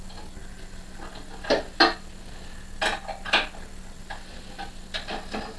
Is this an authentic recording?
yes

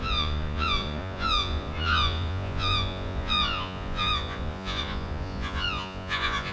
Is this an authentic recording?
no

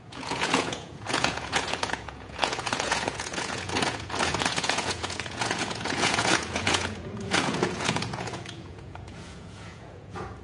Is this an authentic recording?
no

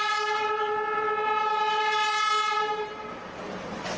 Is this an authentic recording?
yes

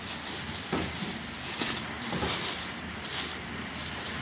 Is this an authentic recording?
yes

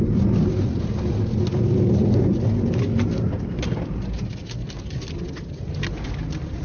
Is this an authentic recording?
yes